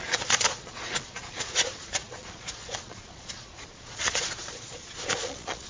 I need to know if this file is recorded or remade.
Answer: remade